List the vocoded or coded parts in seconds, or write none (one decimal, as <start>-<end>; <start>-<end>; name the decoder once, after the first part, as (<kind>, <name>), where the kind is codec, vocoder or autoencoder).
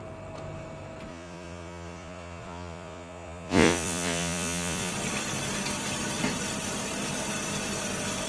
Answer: 1.1-4.9 (vocoder, Vocos)